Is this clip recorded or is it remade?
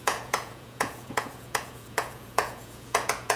remade